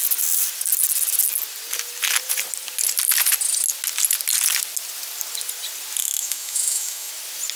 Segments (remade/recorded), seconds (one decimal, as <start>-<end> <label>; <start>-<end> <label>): 0.0-6.0 recorded; 6.0-7.1 remade; 7.1-7.6 recorded